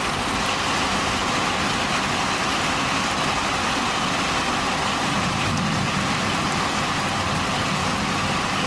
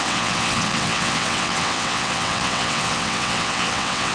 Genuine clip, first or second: first